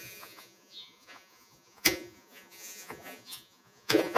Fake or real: fake